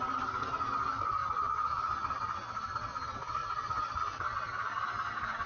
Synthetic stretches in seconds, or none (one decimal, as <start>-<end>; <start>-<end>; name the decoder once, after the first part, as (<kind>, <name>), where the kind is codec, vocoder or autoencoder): 3.4-4.0 (vocoder, BigVGAN v2)